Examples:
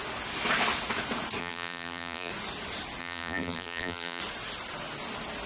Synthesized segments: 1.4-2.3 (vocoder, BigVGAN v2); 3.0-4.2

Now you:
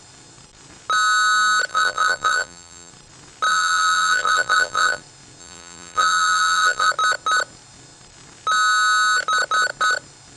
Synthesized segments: 1.7-2.9 (vocoder, BigVGAN v2); 3.5-5.0; 5.4-6.9

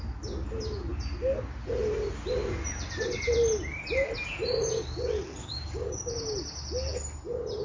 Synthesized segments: 5.4-6.1 (codec, DAC)

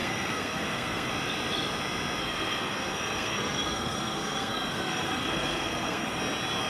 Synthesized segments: 0.0-1.1 (codec, SNAC); 2.2-6.2

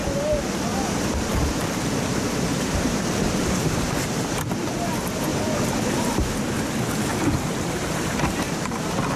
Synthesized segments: 0.7-4.5 (vocoder, BigVGAN v2); 5.3-6.3; 7.1-8.3

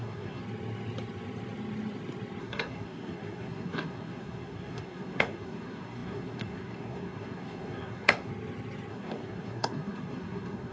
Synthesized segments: 0.0-0.4 (codec, SNAC); 2.4-8.3; 8.9-10.7

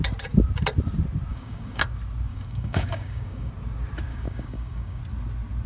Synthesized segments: 1.3-1.8 (codec, DAC); 2.3-3.5; 4.1-5.0

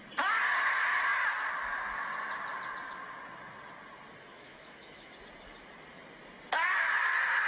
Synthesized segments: 4.3-5.1 (autoencoder, DAC-VAE)